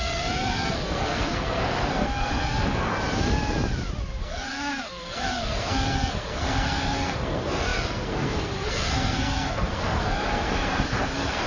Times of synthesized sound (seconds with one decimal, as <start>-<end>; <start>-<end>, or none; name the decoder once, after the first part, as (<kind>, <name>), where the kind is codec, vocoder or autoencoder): 0.0-2.9 (codec, SNAC); 4.2-11.5